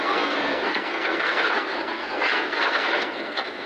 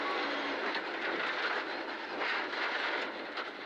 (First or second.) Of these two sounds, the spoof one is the first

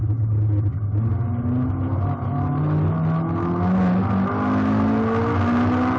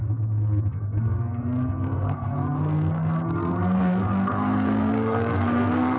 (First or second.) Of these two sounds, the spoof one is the second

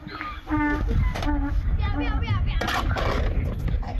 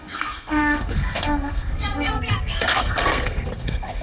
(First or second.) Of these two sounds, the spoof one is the second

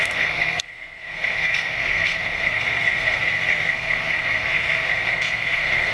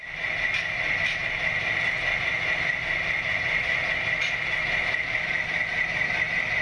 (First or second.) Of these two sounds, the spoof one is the first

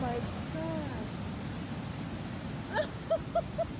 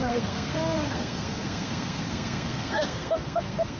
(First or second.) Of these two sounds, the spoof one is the second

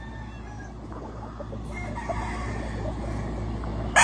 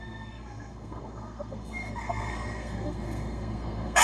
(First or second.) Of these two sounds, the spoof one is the second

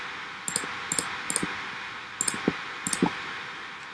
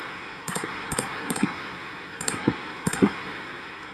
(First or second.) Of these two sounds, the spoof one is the second